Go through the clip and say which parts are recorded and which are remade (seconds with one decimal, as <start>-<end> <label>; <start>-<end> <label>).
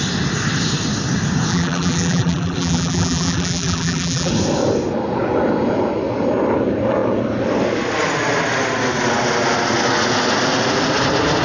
0.0-1.5 recorded; 1.5-4.3 remade; 4.3-11.4 recorded